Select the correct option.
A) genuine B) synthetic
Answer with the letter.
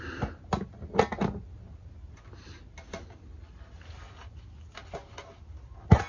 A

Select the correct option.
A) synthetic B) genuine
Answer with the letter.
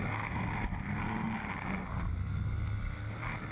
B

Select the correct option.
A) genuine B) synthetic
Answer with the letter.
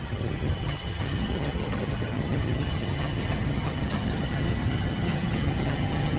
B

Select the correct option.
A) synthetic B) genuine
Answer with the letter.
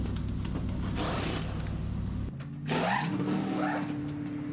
B